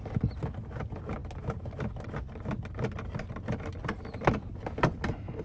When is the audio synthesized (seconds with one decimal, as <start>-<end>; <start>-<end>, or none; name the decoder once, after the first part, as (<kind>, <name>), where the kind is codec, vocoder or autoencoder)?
none